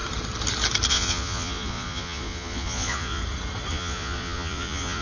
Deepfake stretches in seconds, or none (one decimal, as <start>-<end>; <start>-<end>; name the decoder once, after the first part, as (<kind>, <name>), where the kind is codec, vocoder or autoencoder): 0.9-3.2 (vocoder, Vocos); 3.7-5.0